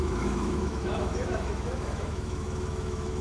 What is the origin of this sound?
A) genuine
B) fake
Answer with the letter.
B